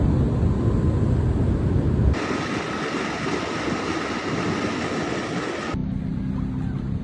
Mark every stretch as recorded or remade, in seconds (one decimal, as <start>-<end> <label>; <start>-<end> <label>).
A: 0.0-7.0 recorded